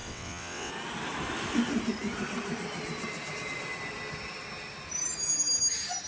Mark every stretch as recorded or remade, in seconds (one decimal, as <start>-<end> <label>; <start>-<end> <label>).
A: 0.0-0.7 remade; 0.7-6.1 recorded